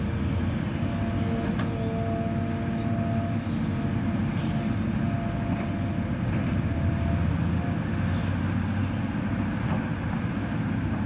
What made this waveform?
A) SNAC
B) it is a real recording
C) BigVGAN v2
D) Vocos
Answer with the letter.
B